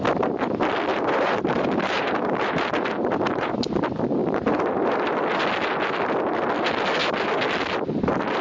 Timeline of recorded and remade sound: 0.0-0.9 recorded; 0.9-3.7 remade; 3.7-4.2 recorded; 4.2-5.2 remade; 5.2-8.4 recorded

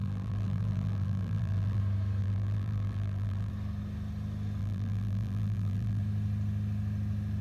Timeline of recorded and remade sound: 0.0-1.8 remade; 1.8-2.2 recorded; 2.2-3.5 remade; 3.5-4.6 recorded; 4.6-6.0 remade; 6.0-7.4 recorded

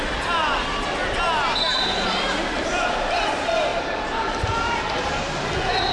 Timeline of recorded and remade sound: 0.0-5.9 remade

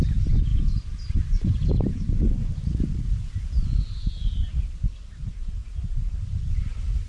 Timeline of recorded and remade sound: 0.0-7.1 remade